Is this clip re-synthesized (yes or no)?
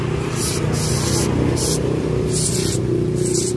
no